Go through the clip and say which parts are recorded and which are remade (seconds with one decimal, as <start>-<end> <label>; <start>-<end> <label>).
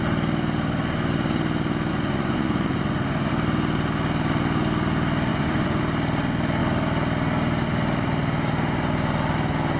0.0-1.9 recorded; 1.9-3.3 remade; 3.3-5.3 recorded; 5.3-5.8 remade; 5.8-9.8 recorded